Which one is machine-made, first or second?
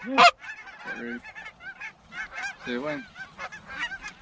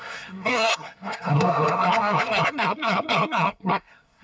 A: second